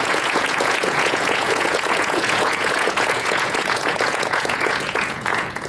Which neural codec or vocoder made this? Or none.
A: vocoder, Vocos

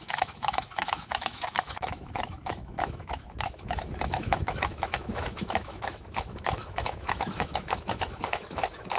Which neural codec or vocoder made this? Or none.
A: autoencoder, DAC-VAE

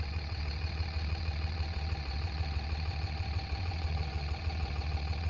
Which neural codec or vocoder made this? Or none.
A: vocoder, WaveNeXt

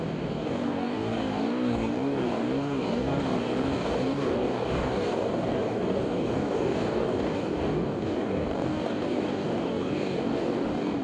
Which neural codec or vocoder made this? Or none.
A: codec, DAC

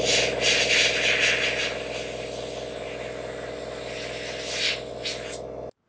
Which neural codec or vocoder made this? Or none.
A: none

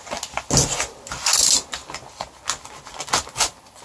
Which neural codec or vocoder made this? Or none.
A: none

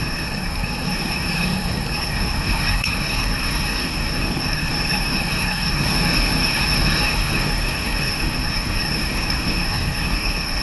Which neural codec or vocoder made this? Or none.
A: codec, SNAC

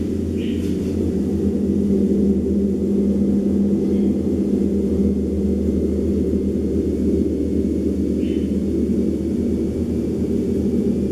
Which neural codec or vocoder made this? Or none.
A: none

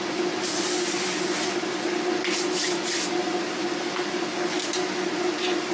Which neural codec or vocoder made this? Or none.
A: none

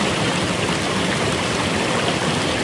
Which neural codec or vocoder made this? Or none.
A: none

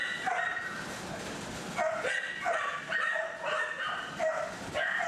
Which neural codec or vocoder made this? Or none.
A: none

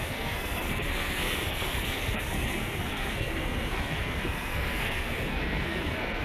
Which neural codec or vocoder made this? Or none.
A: codec, SNAC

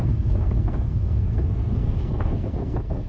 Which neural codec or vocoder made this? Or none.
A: codec, SNAC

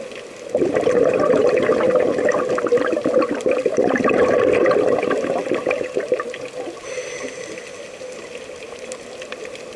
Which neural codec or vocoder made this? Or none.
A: none